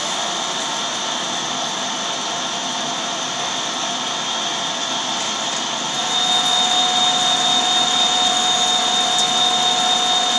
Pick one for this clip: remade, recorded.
recorded